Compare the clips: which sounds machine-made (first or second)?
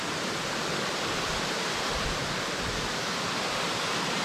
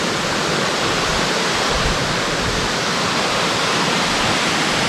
first